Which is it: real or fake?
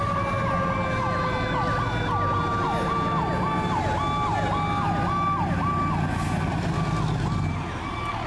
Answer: real